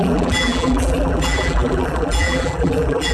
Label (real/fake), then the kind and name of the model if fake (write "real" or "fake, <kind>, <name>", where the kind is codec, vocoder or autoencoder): fake, vocoder, BigVGAN v2